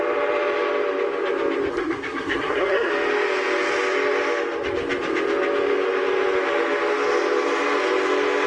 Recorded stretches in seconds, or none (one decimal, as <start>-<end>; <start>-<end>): 0.0-1.7; 2.9-8.5